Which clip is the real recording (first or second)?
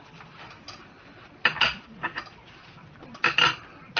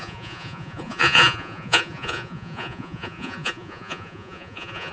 first